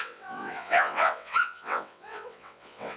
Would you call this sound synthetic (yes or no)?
yes